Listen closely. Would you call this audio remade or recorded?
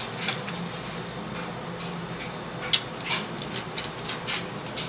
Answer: recorded